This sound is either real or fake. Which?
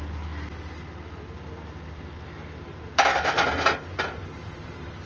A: real